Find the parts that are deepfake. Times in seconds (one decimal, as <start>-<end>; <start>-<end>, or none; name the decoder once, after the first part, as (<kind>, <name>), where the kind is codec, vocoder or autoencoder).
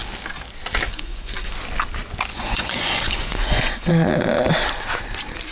0.9-1.5 (vocoder, Vocos); 2.3-3.9